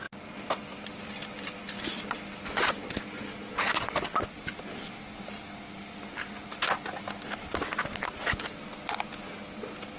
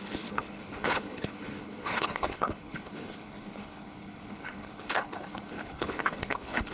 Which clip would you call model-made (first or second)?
second